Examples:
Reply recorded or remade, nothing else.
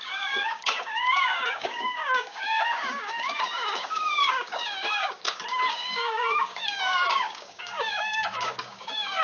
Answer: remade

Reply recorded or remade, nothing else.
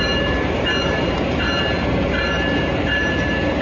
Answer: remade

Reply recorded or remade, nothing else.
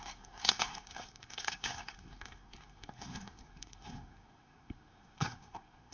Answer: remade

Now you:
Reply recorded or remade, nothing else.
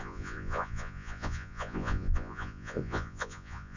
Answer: remade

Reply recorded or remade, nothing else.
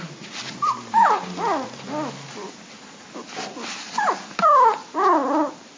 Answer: recorded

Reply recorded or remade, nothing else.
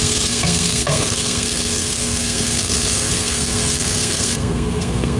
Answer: remade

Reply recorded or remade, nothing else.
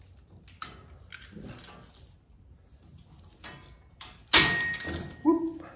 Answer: recorded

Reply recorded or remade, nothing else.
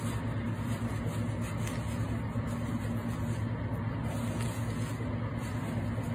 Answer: recorded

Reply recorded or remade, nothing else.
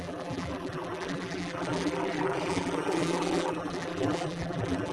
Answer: remade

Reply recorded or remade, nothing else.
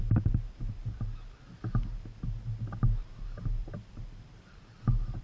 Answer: recorded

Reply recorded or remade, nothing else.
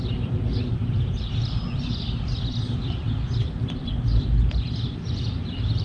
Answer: recorded